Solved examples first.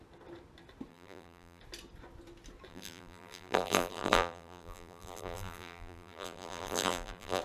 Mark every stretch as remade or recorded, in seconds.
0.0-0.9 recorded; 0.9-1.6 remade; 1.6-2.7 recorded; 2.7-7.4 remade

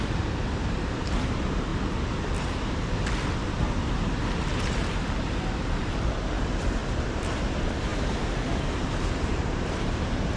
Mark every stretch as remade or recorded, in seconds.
0.0-1.7 remade; 1.7-4.2 recorded; 4.2-10.4 remade

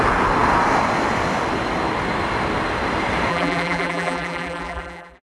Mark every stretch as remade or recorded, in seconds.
0.0-3.3 recorded; 3.3-5.2 remade

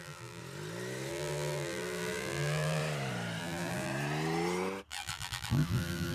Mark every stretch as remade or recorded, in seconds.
0.0-0.4 remade; 0.4-1.1 recorded; 1.1-2.8 remade; 2.8-3.4 recorded; 3.4-3.9 remade; 3.9-4.9 recorded; 4.9-6.1 remade

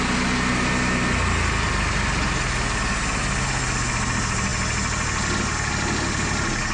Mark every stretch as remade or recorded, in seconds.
0.0-6.7 recorded

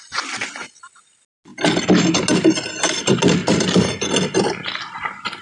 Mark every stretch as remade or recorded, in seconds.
0.0-5.4 recorded

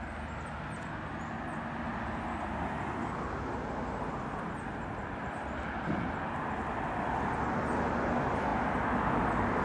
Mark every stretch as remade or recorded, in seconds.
0.0-9.6 recorded

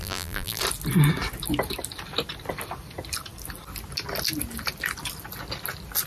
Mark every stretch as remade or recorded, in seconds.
0.0-0.6 remade; 0.6-6.1 recorded